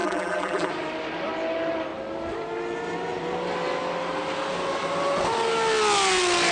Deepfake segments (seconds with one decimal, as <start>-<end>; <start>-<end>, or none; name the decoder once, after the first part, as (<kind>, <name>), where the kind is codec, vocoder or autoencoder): 0.0-0.7 (vocoder, BigVGAN v2)

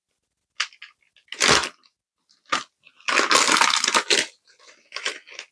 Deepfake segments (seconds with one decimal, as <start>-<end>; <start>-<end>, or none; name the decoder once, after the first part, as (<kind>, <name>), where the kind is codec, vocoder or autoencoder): none

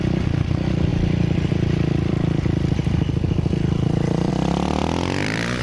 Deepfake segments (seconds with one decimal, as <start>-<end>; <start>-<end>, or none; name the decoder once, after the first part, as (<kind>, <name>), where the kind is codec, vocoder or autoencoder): 0.9-4.3 (vocoder, BigVGAN v2); 4.8-5.6

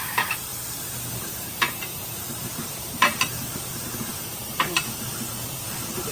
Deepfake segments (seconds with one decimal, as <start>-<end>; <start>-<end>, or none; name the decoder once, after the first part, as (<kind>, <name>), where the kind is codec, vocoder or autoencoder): 0.0-0.5 (vocoder, BigVGAN v2); 1.2-6.1

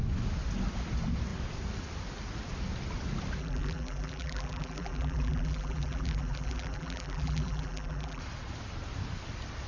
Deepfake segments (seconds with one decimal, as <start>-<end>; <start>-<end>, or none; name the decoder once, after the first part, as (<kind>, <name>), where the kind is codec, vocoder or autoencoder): 3.4-8.2 (vocoder, BigVGAN v2)

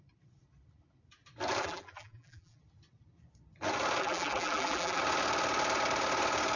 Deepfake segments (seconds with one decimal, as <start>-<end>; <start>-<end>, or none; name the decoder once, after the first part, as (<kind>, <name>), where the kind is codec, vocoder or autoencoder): 1.6-2.6 (vocoder, BigVGAN v2); 4.0-5.0

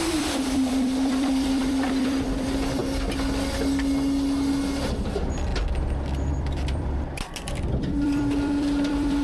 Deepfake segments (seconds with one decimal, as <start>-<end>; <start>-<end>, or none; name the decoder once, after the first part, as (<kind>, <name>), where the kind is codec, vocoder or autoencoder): 0.0-2.8 (vocoder, BigVGAN v2); 5.1-5.5; 6.3-9.2